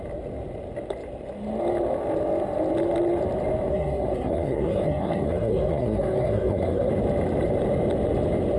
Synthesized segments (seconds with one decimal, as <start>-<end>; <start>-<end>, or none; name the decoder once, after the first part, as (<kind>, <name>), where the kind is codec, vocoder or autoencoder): 3.7-6.9 (codec, SNAC)